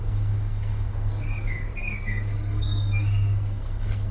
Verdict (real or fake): fake